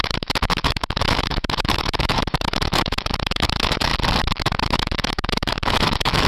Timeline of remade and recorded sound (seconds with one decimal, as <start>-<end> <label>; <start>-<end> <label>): 0.0-3.9 remade; 3.9-4.4 recorded; 4.4-6.3 remade